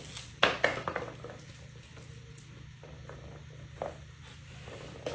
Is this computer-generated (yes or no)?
no